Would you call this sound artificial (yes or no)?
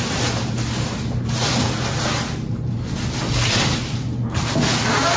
no